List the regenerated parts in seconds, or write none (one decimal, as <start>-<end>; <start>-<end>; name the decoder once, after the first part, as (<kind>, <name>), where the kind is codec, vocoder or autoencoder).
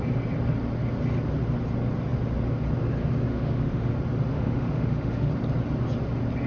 3.3-3.9 (autoencoder, DAC-VAE); 4.3-5.3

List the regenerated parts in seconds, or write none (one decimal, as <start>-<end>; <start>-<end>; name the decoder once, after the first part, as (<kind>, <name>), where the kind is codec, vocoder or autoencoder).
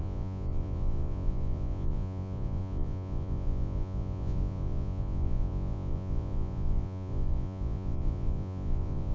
0.0-9.1 (vocoder, Vocos)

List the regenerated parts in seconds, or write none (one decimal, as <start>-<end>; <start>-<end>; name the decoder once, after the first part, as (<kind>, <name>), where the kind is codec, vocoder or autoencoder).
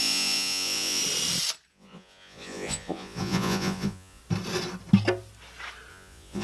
0.0-1.0 (vocoder, Vocos); 1.7-4.2; 5.9-6.4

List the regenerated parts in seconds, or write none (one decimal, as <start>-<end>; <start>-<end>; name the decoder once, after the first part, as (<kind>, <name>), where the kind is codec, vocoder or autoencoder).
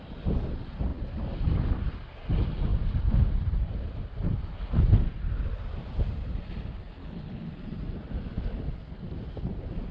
7.0-7.5 (codec, HILCodec)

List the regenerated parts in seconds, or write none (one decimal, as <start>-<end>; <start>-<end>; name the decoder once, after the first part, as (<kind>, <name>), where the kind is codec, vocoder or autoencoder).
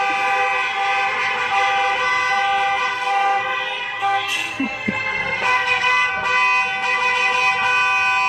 2.9-6.1 (codec, SNAC)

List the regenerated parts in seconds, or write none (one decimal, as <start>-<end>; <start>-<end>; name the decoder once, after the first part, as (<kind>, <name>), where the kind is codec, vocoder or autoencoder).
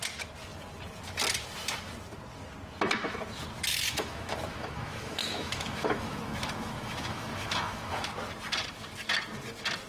3.7-8.1 (autoencoder, DAC-VAE)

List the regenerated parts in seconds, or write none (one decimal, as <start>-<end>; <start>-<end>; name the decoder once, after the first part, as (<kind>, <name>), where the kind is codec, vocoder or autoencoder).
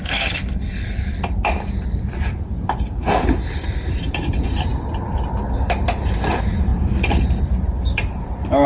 0.0-1.2 (codec, SNAC)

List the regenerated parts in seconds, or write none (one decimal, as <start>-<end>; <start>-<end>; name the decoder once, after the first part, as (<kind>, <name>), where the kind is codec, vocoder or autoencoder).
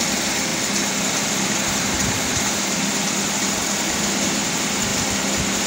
none